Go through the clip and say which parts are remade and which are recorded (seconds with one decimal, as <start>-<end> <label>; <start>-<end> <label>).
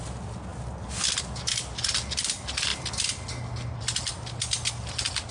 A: 0.0-5.3 recorded